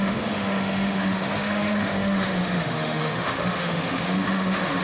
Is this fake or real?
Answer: fake